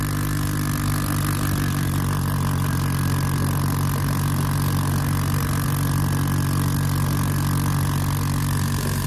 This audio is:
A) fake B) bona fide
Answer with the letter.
B